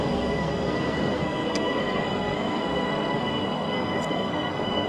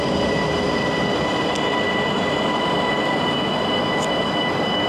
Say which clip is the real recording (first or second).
second